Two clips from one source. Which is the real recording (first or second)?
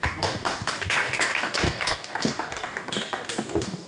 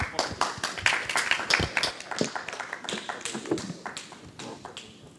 second